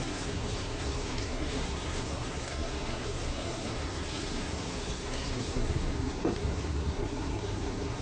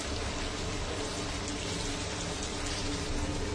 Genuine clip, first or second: second